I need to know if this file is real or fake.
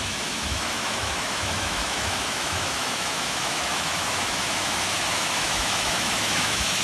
fake